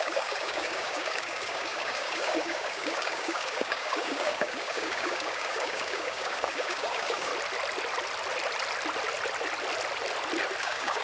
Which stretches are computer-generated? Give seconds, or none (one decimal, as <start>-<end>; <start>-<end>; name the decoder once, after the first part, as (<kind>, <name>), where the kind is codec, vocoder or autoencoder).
0.0-7.3 (codec, DAC); 10.6-11.0